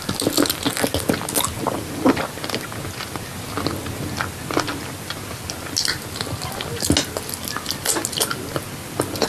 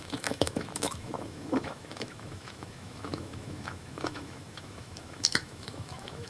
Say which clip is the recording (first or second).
first